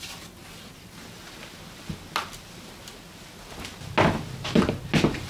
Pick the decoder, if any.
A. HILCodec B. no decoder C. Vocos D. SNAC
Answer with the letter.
B